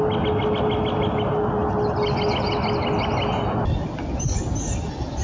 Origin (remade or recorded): recorded